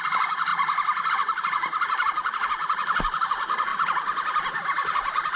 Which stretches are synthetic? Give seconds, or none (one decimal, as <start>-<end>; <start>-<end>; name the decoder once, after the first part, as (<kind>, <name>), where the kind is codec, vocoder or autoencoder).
0.0-2.6 (vocoder, BigVGAN v2); 3.3-3.7; 4.5-5.4

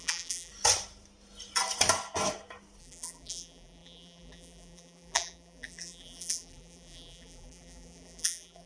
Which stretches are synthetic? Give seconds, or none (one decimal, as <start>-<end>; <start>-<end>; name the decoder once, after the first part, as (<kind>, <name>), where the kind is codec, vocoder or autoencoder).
0.0-0.5 (vocoder, BigVGAN v2); 2.8-8.7

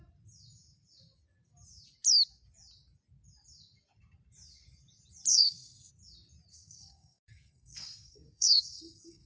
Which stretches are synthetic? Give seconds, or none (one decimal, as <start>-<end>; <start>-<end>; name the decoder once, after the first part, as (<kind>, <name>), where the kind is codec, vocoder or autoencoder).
5.3-5.9 (codec, SNAC); 6.5-9.3

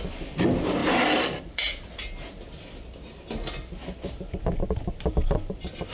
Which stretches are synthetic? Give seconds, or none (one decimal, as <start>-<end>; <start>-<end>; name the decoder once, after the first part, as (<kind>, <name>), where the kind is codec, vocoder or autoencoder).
none

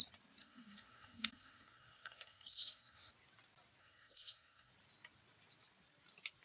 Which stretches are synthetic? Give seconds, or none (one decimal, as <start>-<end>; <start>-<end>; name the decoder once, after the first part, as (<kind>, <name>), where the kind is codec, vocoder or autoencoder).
0.4-3.1 (codec, SNAC); 3.8-4.7

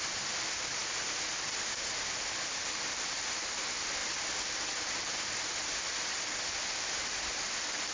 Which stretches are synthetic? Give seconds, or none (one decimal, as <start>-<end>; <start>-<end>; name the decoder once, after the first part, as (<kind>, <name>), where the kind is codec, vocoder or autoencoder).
none